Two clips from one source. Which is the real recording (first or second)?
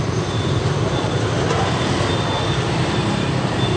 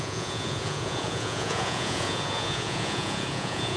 first